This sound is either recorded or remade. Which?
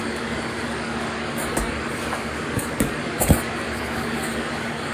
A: remade